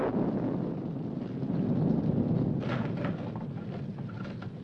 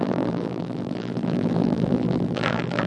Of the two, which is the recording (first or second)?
first